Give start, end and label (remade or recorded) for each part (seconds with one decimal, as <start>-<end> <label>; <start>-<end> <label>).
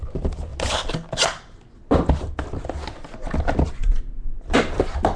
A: 0.0-5.2 recorded